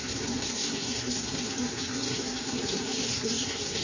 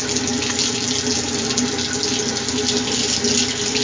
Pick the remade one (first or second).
first